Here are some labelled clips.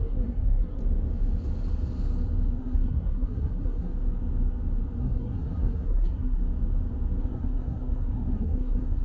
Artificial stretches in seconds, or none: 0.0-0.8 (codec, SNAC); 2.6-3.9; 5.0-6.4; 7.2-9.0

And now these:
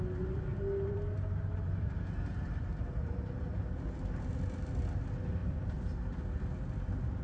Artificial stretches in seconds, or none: 0.5-4.8 (vocoder, BigVGAN v2)

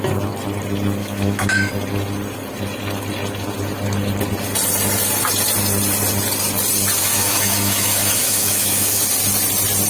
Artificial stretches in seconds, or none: 1.0-1.7 (autoencoder, DAC-VAE); 7.0-9.0

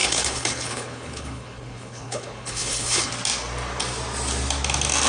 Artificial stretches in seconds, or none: 0.0-3.1 (codec, HILCodec)

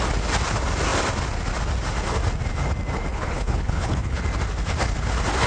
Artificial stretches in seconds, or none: 3.1-4.2 (codec, HILCodec)

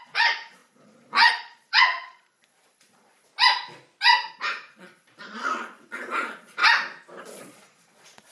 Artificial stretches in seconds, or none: 0.0-3.3 (vocoder, Vocos); 4.3-6.6; 7.2-8.3

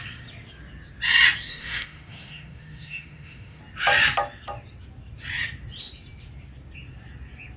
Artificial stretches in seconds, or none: 1.5-3.6 (autoencoder, DAC-VAE)

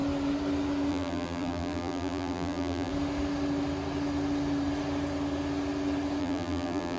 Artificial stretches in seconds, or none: 0.9-2.9 (vocoder, BigVGAN v2); 6.2-7.0